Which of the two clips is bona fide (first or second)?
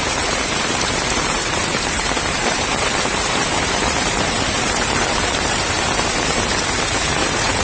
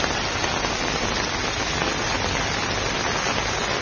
second